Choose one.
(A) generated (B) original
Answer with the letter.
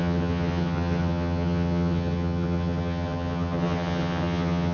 A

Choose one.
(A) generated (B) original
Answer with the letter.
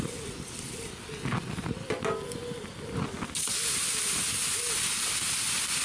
B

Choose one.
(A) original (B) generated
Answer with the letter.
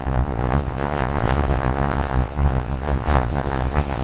B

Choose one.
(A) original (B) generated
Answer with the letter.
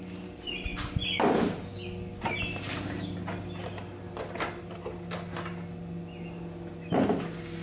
A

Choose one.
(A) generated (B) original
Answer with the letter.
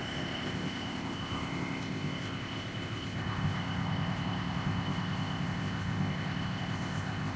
A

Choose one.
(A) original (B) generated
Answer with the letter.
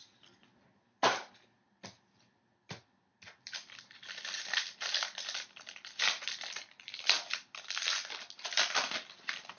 A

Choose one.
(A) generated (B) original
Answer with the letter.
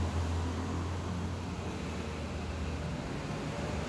B